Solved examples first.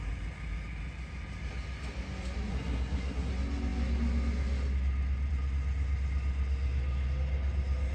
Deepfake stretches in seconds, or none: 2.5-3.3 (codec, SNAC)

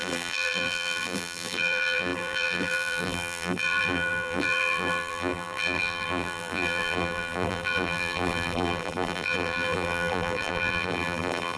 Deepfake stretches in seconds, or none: 0.0-11.6 (vocoder, BigVGAN v2)